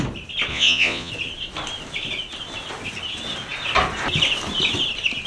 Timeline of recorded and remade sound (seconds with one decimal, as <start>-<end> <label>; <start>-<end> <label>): 0.0-0.5 recorded; 0.5-1.1 remade; 1.1-5.3 recorded